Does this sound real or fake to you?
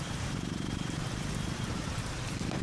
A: fake